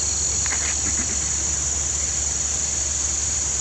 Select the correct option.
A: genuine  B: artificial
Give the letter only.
A